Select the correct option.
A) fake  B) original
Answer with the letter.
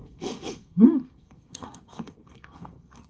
A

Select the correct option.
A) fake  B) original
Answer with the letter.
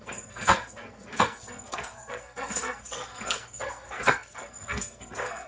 A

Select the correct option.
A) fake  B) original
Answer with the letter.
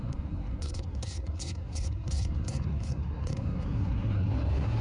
A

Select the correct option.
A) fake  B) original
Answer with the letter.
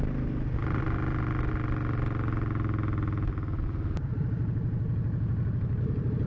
B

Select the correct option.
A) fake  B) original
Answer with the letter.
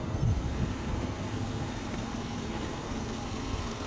A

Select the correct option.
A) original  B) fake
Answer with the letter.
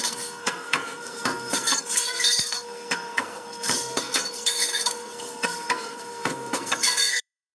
B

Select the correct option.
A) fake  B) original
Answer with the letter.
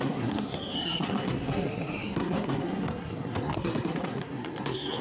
A